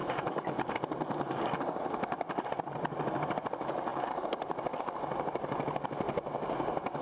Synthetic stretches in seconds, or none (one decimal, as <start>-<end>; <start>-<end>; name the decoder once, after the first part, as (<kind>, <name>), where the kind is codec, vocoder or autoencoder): 0.0-1.4 (vocoder, BigVGAN v2); 3.9-4.8